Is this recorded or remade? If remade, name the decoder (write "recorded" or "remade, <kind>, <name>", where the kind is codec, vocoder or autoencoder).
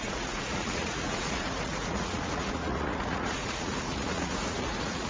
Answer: remade, vocoder, Vocos